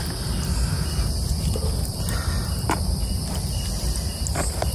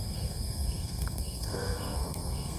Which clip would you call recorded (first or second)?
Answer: first